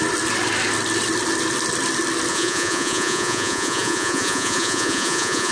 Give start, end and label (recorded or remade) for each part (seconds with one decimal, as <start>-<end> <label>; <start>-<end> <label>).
0.0-2.3 recorded; 2.3-5.5 remade